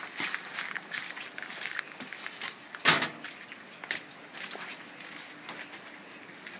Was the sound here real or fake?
real